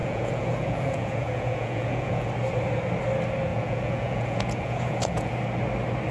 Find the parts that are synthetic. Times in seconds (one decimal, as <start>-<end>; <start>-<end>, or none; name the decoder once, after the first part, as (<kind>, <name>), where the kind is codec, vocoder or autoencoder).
0.0-2.3 (vocoder, Vocos); 3.5-5.3